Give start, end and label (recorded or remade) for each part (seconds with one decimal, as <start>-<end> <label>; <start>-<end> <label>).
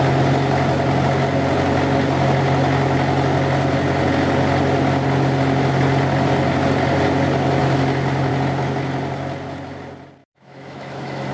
0.0-10.2 recorded; 10.2-11.3 remade